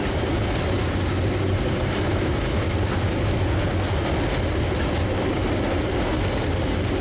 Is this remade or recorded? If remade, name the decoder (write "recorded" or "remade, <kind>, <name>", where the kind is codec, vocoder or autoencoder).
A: recorded